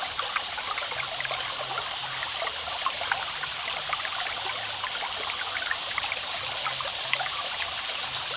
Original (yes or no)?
yes